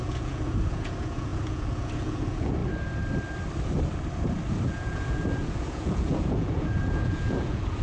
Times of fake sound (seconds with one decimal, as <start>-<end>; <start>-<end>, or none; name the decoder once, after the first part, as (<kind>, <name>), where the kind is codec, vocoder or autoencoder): 0.0-2.6 (vocoder, Vocos); 4.7-7.8